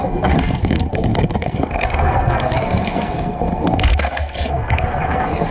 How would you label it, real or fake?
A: fake